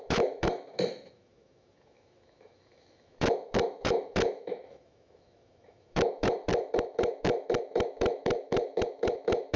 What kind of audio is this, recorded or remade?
remade